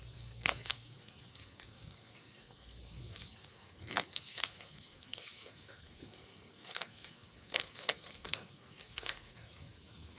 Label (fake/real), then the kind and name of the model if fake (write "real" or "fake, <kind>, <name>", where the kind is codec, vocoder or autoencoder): fake, codec, SNAC